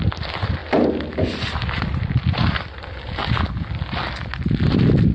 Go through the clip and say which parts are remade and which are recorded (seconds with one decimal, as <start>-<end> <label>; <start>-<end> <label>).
0.0-5.1 remade